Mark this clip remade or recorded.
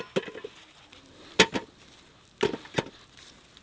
recorded